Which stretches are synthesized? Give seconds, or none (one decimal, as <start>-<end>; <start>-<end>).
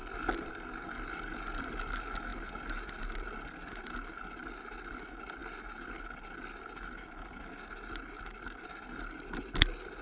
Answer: none